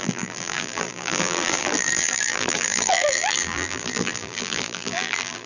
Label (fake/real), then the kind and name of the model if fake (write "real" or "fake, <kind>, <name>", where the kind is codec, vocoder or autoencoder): fake, vocoder, BigVGAN v2